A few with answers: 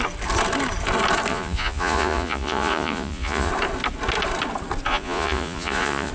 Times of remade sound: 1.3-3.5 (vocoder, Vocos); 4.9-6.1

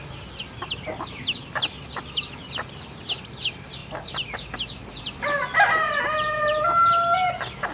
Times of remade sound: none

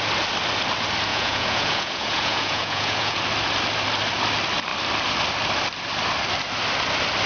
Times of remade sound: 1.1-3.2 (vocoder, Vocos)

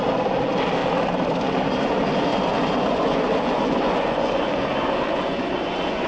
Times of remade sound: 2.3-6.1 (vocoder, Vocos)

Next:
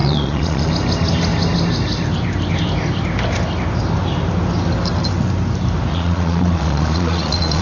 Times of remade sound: 0.0-0.7 (vocoder, Vocos); 5.9-7.6

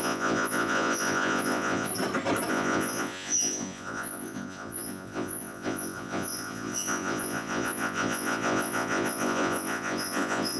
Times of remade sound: 0.0-1.9 (vocoder, Vocos); 2.5-10.6

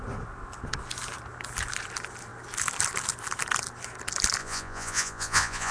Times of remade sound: 4.4-5.7 (vocoder, Vocos)